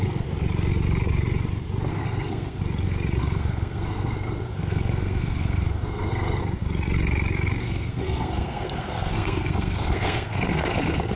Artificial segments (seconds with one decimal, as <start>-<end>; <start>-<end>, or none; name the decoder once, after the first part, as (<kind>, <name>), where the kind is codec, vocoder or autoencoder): 1.9-2.6 (codec, SNAC); 3.2-6.4; 7.6-11.2